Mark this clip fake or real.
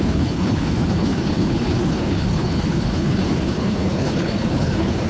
fake